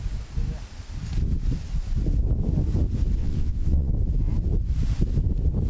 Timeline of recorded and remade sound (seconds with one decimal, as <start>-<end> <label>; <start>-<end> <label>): 0.0-3.2 recorded; 3.2-3.9 remade; 3.9-5.7 recorded